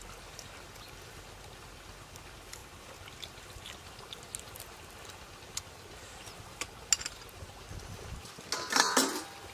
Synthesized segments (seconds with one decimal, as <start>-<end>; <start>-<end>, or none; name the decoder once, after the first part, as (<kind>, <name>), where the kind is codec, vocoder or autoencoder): none